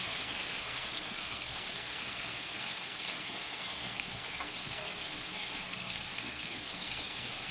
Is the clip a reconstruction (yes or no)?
yes